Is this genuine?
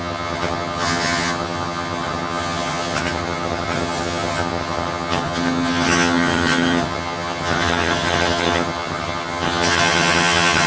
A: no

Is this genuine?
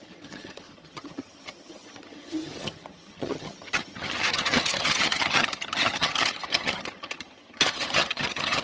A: no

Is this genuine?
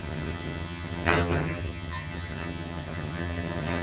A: no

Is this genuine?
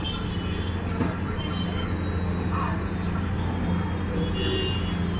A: yes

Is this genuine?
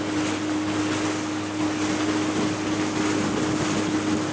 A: yes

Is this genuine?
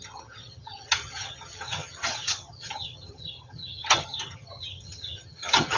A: no